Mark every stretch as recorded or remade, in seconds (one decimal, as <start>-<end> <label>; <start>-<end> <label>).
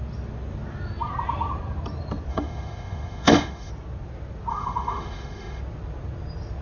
0.0-2.3 recorded; 2.3-3.7 remade; 3.7-4.5 recorded; 4.5-5.6 remade; 5.6-6.6 recorded